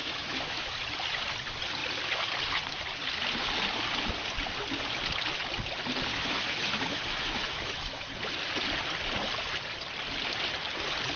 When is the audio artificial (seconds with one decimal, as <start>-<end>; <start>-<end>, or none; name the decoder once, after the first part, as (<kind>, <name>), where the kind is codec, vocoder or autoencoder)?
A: 0.0-0.7 (autoencoder, DAC-VAE); 6.1-8.1